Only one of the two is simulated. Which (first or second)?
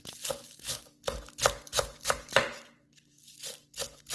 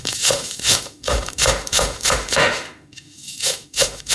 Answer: second